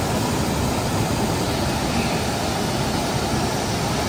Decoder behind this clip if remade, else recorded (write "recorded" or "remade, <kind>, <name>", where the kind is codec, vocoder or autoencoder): recorded